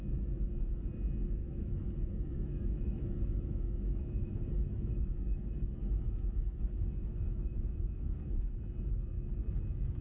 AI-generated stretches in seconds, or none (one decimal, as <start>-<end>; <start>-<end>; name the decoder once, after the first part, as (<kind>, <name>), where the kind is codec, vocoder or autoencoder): 1.4-6.6 (autoencoder, DAC-VAE); 7.0-8.5